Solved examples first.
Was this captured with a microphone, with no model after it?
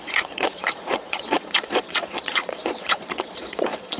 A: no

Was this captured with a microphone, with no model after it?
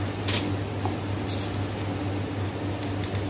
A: yes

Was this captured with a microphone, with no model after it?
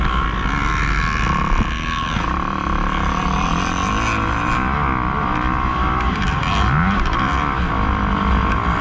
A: yes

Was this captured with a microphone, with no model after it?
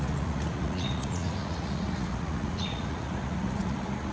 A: no